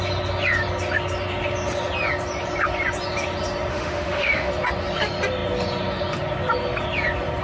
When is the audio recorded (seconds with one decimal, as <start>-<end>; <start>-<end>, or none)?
0.0-3.7; 4.5-7.4